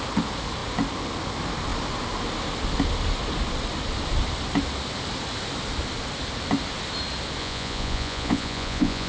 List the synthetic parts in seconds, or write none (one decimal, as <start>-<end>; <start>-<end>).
7.4-9.1